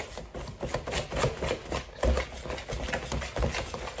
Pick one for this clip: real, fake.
real